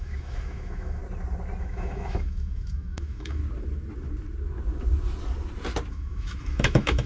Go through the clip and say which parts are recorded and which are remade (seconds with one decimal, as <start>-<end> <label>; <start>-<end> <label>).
0.0-1.0 remade; 1.0-1.6 recorded; 1.6-3.4 remade; 3.4-5.9 recorded; 5.9-7.1 remade